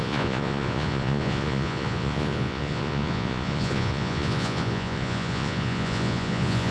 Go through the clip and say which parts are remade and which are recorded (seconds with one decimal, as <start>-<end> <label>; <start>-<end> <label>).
0.0-6.7 remade